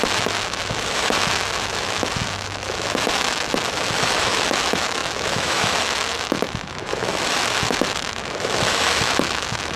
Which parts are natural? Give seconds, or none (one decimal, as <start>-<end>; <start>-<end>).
none